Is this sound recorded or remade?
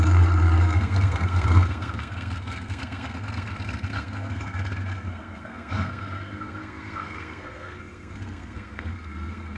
remade